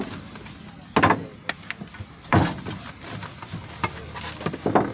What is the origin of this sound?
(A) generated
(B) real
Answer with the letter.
B